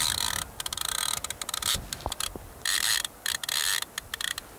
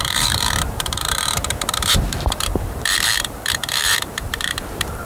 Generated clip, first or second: second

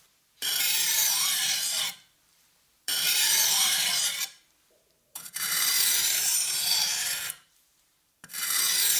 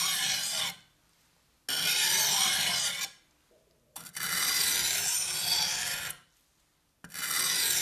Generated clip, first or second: first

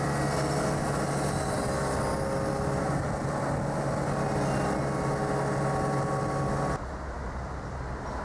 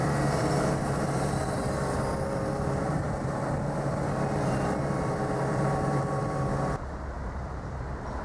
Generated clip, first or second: second